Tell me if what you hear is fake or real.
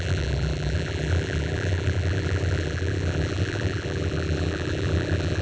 fake